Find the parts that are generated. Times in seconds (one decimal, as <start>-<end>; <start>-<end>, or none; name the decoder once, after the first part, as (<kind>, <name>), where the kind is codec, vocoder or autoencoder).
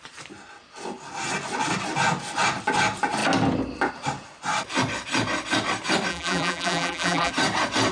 6.1-7.3 (vocoder, BigVGAN v2)